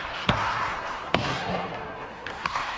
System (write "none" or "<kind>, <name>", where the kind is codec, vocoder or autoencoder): codec, SNAC